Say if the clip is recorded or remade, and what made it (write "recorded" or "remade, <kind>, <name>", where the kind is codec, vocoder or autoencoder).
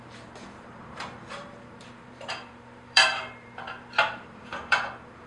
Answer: remade, vocoder, BigVGAN v2